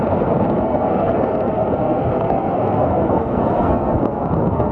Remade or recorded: remade